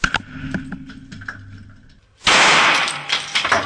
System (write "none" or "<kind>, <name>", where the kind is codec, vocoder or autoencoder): none